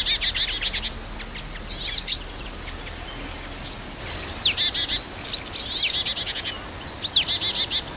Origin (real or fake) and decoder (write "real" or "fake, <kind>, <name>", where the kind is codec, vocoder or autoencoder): real